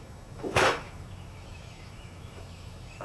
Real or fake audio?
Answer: fake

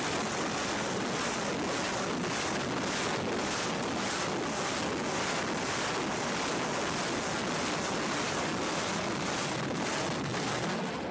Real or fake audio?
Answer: real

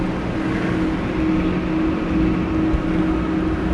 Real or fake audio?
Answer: real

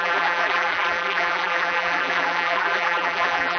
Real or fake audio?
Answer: fake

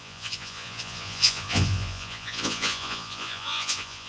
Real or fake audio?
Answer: fake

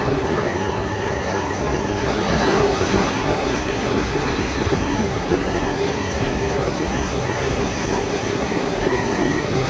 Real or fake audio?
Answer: fake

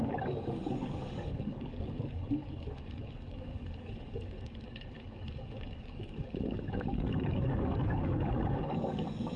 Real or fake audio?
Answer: fake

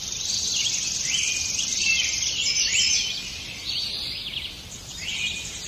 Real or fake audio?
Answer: real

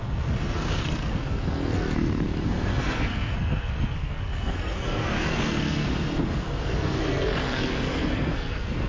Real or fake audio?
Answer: fake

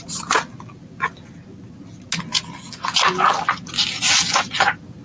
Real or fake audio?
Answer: real